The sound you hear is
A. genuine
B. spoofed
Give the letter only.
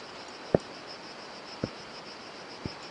A